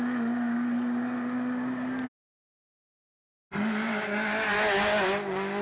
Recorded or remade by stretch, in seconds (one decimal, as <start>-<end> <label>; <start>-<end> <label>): 0.0-5.6 recorded